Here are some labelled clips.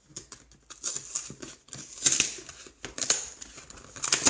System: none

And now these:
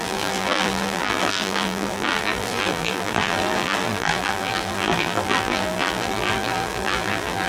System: vocoder, BigVGAN v2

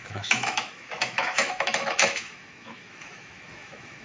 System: autoencoder, DAC-VAE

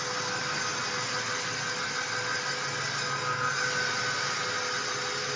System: none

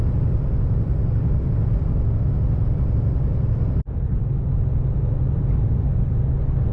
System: none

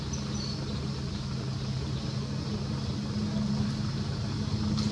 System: none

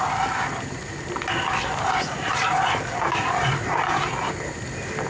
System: none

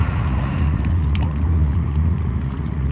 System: vocoder, Vocos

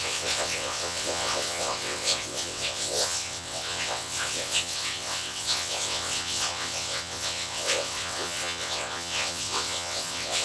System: vocoder, WaveNeXt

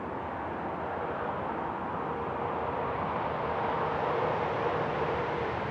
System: none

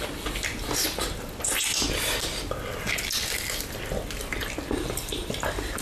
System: none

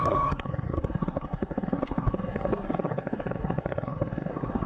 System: codec, SNAC